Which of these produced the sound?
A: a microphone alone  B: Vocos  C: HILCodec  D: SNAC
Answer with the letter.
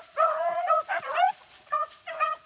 B